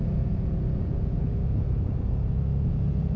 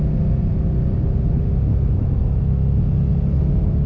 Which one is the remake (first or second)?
first